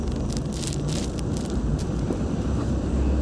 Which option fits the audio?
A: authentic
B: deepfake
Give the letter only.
B